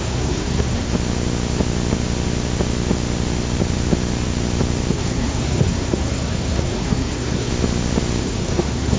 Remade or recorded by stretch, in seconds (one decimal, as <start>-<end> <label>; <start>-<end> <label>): 0.0-0.9 remade; 0.9-4.9 recorded; 4.9-7.5 remade; 7.5-8.2 recorded; 8.2-9.0 remade